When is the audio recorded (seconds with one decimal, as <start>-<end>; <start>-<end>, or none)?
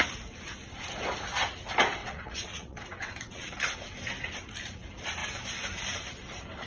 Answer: 0.0-2.0; 3.5-6.7